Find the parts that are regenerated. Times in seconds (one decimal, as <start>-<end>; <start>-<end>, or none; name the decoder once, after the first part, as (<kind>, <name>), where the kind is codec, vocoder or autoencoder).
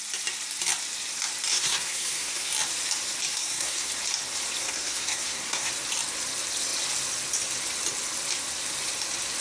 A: 1.5-2.5 (codec, SNAC); 3.3-3.9; 4.6-5.7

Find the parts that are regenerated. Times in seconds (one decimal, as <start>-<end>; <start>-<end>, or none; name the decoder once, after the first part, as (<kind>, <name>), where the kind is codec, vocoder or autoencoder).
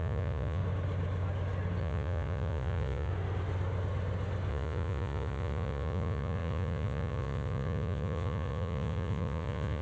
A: 0.0-0.6 (vocoder, Vocos); 1.8-3.1; 4.5-9.8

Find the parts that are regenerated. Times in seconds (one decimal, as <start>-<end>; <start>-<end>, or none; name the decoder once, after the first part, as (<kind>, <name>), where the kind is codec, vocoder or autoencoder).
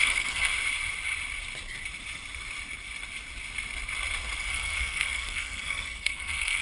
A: 0.0-0.5 (codec, SNAC); 4.5-6.6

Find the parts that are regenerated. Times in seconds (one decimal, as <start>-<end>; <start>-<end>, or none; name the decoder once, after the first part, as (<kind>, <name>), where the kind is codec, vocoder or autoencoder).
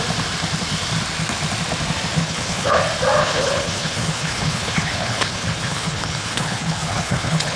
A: 2.2-2.8 (codec, HILCodec); 3.2-7.6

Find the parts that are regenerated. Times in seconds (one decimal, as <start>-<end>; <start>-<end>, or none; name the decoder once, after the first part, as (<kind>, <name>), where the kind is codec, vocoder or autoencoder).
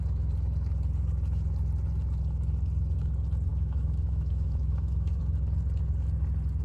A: 3.5-5.2 (autoencoder, DAC-VAE)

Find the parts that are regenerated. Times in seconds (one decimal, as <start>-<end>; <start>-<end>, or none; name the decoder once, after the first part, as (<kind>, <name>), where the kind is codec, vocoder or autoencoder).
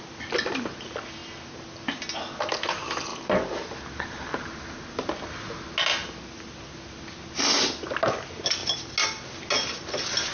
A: none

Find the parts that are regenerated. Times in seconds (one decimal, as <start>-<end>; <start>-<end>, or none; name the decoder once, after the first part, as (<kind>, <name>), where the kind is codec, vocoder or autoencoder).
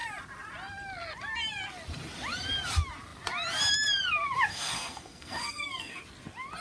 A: 4.5-6.0 (codec, SNAC)